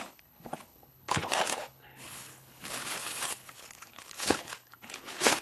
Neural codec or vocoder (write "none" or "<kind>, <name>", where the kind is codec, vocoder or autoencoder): codec, HILCodec